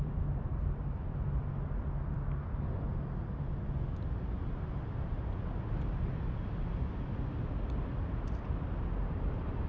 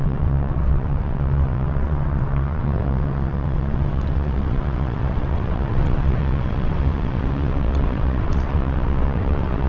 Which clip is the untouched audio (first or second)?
first